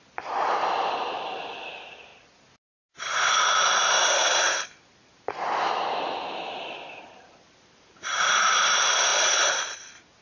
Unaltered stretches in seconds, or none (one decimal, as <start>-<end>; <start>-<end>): 2.1-6.9